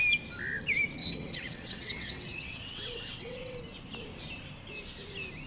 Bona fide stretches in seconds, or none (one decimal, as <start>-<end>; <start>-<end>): 0.0-1.0; 3.6-5.5